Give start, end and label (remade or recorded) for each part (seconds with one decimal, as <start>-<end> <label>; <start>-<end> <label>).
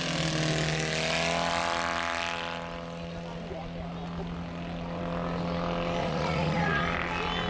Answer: 0.0-6.0 recorded; 6.0-6.8 remade; 6.8-7.5 recorded